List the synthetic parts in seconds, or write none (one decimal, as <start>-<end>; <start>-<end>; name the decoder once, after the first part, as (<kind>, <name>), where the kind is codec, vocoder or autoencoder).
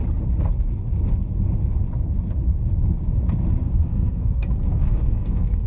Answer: 3.6-5.7 (codec, SNAC)